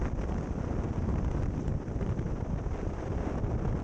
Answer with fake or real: real